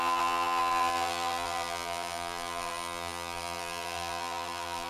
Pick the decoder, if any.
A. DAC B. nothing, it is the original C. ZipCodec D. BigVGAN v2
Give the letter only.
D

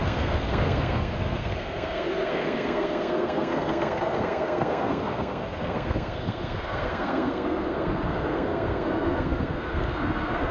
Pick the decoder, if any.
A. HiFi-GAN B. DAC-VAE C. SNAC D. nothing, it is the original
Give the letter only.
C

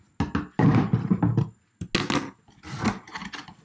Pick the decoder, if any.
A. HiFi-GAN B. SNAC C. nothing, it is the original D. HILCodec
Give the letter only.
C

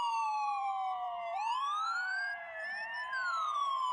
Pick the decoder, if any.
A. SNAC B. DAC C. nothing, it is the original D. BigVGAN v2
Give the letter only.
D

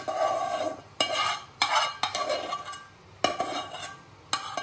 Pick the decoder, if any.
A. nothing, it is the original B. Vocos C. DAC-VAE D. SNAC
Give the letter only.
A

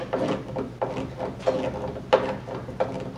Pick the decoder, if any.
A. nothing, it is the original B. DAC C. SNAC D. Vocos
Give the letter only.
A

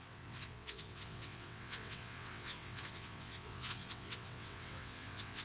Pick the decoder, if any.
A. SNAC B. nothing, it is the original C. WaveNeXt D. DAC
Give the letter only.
C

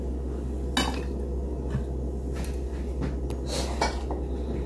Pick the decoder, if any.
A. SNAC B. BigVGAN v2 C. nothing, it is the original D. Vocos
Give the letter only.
C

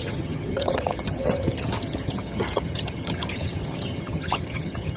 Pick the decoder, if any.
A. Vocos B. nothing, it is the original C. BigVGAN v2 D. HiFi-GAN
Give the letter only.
D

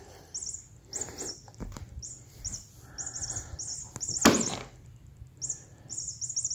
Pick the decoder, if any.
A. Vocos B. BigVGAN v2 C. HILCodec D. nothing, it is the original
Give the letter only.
D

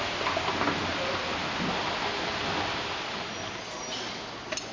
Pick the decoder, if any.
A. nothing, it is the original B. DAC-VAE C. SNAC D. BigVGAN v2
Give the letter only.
A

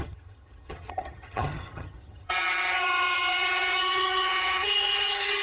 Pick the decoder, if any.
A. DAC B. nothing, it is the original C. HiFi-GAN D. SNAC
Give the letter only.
C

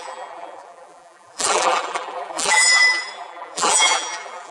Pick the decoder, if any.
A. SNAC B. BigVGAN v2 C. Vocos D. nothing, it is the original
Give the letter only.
B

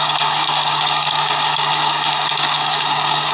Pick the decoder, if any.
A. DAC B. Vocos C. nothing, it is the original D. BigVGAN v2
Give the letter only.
A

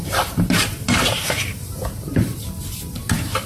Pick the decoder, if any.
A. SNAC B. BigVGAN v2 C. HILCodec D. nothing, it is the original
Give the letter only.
B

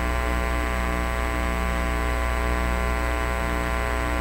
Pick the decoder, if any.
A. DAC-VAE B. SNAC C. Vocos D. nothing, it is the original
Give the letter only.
D